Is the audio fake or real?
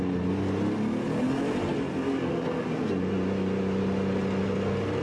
real